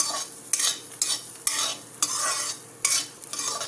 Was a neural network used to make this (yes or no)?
no